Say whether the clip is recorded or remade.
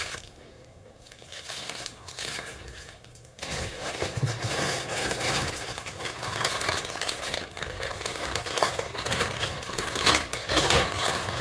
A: remade